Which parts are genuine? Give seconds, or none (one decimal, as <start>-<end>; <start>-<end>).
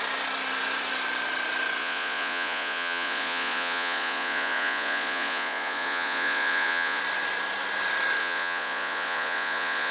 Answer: 0.0-1.8; 7.0-8.2